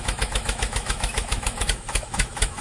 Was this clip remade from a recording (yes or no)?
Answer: yes